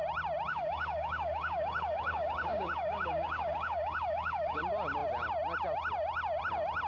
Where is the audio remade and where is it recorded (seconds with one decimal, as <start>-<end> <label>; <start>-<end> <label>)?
0.0-0.5 recorded; 0.5-4.6 remade; 4.6-6.9 recorded